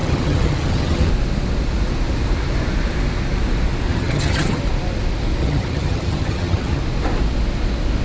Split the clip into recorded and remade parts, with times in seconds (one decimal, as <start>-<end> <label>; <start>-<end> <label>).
0.0-1.1 remade; 1.1-3.9 recorded; 3.9-4.6 remade; 4.6-5.4 recorded; 5.4-6.8 remade; 6.8-8.0 recorded